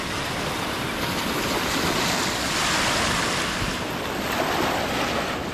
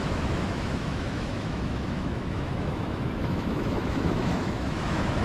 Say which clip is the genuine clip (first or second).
first